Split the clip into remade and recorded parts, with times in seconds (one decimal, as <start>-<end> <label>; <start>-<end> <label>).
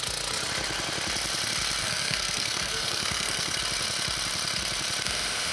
0.0-1.8 recorded; 1.8-3.6 remade; 3.6-5.5 recorded